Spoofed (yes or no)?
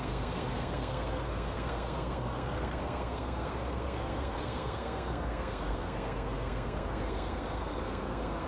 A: yes